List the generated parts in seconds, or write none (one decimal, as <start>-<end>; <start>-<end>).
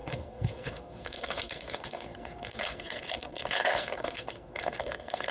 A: 0.0-5.3